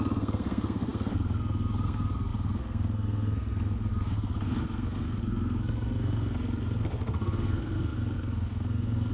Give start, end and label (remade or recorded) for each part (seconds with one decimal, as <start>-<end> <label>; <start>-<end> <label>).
0.0-9.1 remade